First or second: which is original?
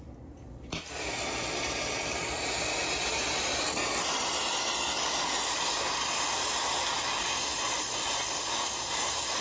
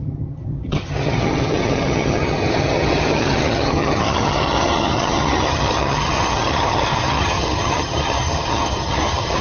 first